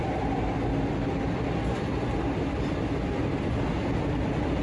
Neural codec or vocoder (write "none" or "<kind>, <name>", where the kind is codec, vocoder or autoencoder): none